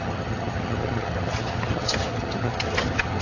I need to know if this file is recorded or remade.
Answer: remade